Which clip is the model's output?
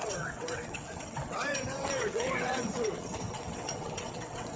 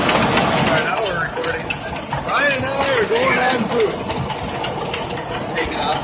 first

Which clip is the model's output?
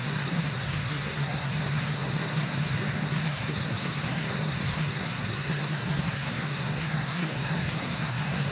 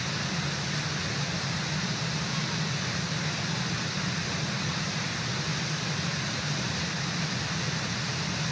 first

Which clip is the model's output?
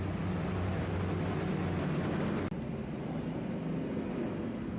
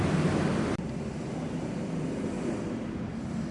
second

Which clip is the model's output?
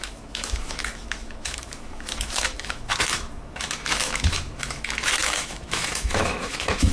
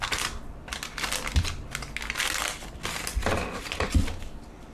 first